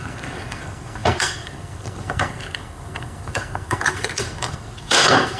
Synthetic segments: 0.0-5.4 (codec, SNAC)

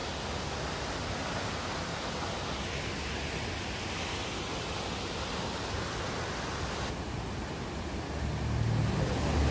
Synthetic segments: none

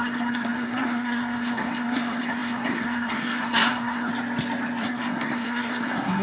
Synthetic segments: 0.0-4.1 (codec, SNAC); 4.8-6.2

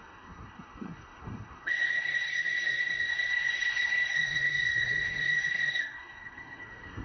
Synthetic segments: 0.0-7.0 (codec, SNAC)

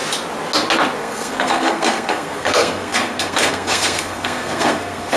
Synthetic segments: 1.0-5.2 (codec, SNAC)

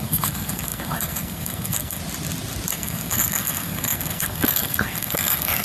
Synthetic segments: 0.0-2.0 (codec, SNAC); 2.7-5.6